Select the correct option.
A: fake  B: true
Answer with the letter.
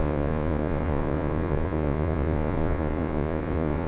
A